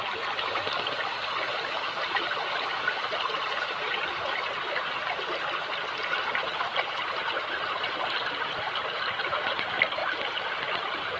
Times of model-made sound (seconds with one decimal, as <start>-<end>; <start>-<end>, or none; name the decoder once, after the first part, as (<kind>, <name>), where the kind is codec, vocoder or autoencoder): none

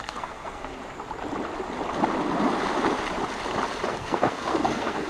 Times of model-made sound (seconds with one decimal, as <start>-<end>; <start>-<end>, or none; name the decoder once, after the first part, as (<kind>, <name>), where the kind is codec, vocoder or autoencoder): 0.0-0.8 (codec, SNAC); 3.9-5.1

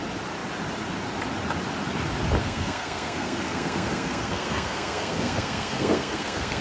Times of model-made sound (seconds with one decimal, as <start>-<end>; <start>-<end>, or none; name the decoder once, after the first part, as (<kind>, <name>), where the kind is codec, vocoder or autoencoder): 2.4-6.6 (codec, SNAC)

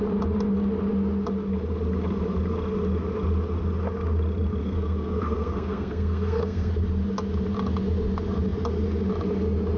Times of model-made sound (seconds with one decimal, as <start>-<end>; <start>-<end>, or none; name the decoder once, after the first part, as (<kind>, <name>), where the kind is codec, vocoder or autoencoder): 4.6-6.7 (codec, SNAC)

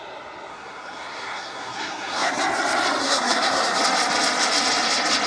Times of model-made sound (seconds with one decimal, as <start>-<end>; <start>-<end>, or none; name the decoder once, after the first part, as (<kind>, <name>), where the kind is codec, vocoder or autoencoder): 0.5-2.4 (codec, SNAC); 3.0-3.8